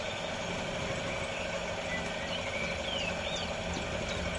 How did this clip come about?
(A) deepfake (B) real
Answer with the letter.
B